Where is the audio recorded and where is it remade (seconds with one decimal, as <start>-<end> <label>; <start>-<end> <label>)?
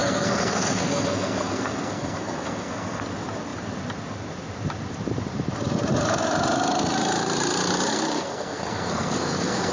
0.0-3.0 remade; 3.0-7.9 recorded; 7.9-9.7 remade